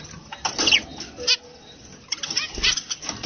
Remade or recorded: recorded